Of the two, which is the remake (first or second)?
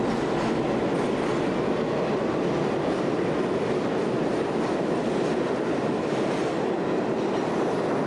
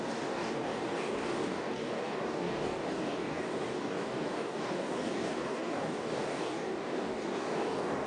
second